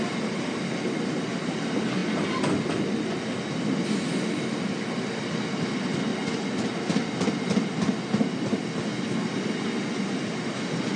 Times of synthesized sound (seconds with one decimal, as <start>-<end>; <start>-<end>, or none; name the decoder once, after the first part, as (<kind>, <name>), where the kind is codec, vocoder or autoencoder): none